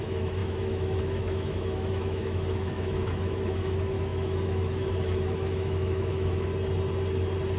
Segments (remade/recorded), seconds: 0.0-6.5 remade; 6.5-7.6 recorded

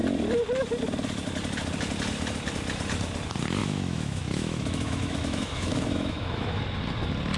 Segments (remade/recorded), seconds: 0.0-3.6 recorded; 3.6-6.6 remade; 6.6-7.4 recorded

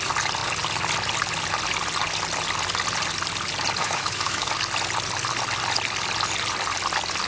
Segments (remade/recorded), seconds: 0.0-3.8 recorded; 3.8-4.5 remade; 4.5-7.3 recorded

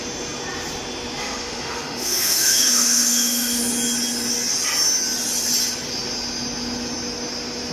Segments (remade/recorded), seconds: 0.0-1.2 recorded; 1.2-3.6 remade; 3.6-7.7 recorded